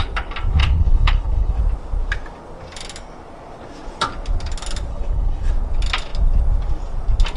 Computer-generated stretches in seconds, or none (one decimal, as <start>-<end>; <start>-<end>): 0.6-1.6; 4.9-5.5